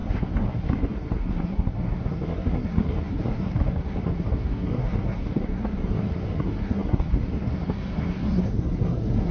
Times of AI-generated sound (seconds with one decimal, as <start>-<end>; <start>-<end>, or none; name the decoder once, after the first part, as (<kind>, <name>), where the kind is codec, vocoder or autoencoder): 0.0-9.3 (codec, SNAC)